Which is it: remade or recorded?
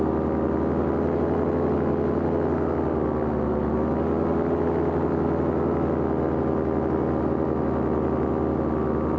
recorded